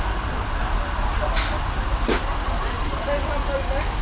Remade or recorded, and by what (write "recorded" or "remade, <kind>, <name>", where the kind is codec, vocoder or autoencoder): recorded